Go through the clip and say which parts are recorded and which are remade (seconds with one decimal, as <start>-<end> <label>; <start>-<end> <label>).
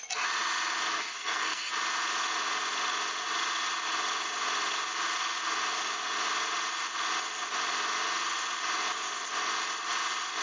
0.0-0.9 recorded; 0.9-1.7 remade; 1.7-10.4 recorded